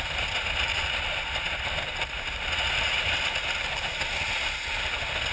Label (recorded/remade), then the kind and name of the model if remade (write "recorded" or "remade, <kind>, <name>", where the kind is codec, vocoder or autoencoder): recorded